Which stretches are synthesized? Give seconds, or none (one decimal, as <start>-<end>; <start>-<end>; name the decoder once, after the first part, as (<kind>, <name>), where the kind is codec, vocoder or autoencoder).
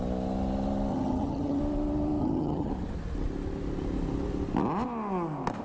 0.9-1.6 (vocoder, HiFi-GAN); 2.2-2.7